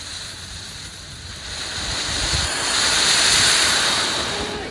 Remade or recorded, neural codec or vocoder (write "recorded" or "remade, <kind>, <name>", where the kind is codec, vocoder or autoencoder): remade, vocoder, BigVGAN v2